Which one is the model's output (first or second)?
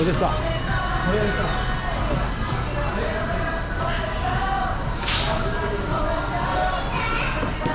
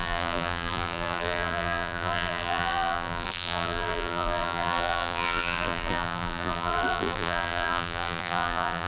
second